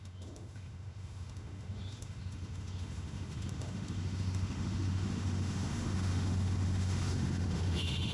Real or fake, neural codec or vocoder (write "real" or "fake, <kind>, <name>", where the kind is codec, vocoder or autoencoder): fake, autoencoder, DAC-VAE